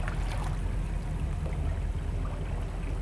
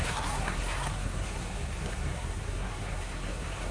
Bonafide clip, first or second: first